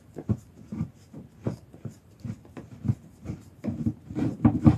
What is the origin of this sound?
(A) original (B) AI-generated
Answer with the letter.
B